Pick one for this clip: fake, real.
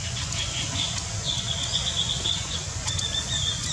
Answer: fake